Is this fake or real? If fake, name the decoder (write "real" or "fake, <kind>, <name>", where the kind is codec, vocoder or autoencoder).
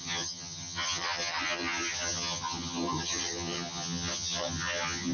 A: fake, vocoder, HiFi-GAN